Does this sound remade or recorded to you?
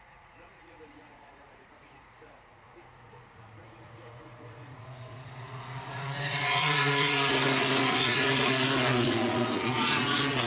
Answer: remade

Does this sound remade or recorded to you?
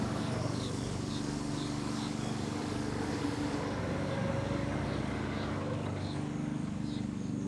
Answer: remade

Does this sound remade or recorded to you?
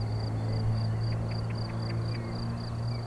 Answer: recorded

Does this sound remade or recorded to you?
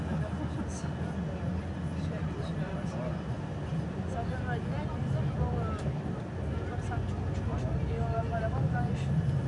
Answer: recorded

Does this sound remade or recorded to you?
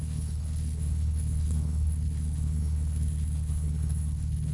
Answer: remade